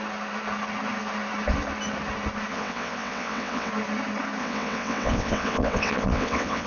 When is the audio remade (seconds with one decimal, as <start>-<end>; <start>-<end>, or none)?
2.5-3.7; 4.4-6.7